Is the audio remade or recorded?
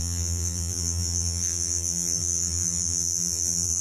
remade